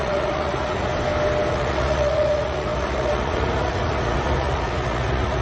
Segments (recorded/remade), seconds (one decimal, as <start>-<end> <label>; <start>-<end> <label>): 0.0-0.9 remade; 0.9-1.5 recorded; 1.5-5.4 remade